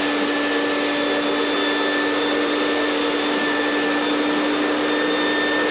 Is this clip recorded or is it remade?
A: recorded